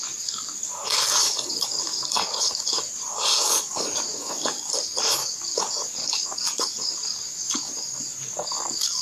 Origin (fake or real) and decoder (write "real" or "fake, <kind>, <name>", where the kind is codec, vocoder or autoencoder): fake, codec, DAC